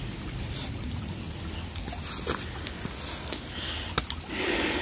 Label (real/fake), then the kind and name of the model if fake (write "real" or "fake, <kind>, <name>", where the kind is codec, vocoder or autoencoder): real